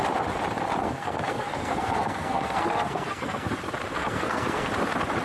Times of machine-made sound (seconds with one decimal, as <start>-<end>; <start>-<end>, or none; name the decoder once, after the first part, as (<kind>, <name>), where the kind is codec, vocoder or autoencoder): 0.8-3.5 (codec, SNAC); 3.9-4.7